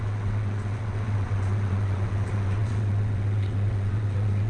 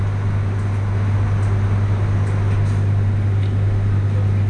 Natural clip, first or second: second